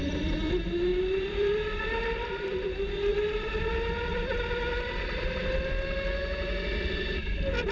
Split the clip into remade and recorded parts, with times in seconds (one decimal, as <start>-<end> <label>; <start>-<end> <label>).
0.0-0.9 recorded; 0.9-2.5 remade; 2.5-3.1 recorded; 3.1-3.7 remade; 3.7-7.7 recorded